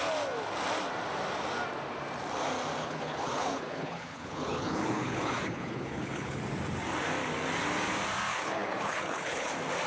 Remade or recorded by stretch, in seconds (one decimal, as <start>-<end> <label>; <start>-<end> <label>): 0.0-2.8 recorded; 2.8-6.4 remade; 6.4-8.3 recorded; 8.3-9.5 remade; 9.5-9.9 recorded